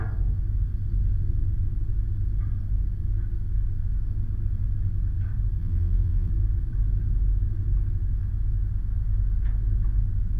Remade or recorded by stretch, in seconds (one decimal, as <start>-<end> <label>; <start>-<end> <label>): 0.0-5.6 recorded; 5.6-6.3 remade; 6.3-10.4 recorded